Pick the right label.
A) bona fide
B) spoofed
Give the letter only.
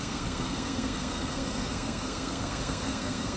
B